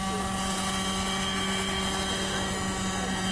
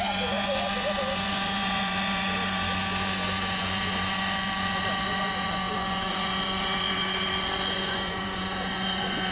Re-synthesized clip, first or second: second